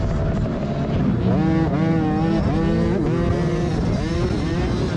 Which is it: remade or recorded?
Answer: recorded